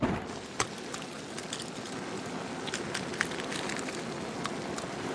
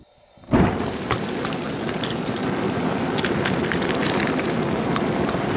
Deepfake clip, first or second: second